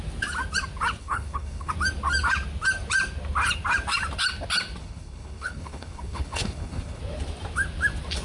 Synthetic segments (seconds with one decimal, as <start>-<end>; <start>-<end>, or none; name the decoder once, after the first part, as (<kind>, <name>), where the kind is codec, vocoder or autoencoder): 1.0-1.7 (codec, HILCodec); 4.8-7.0